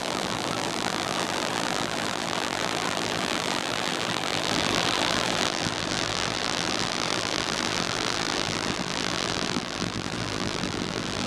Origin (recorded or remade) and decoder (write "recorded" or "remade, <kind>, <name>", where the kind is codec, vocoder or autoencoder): remade, vocoder, BigVGAN v2